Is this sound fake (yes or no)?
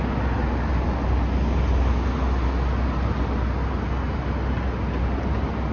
no